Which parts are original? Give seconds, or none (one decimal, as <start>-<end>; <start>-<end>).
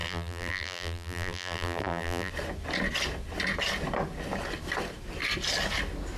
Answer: 2.3-6.2